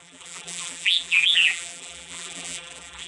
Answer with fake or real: fake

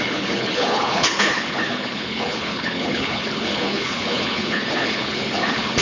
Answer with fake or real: fake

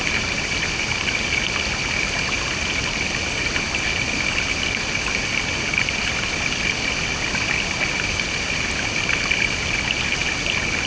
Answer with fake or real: real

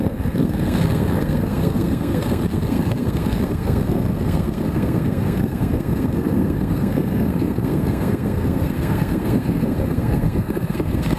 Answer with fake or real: fake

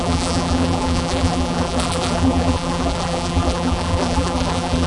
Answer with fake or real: fake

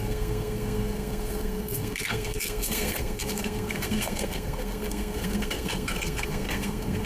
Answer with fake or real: fake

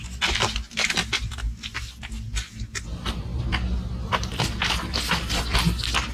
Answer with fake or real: real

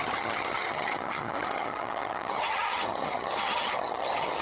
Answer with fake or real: fake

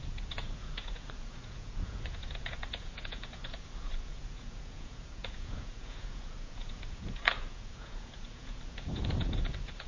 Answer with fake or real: fake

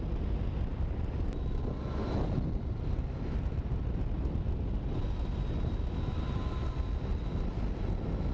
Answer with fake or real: real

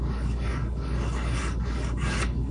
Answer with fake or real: fake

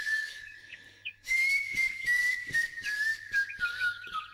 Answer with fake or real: fake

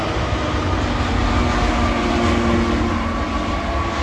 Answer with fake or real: real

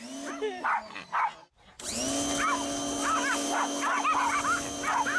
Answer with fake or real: real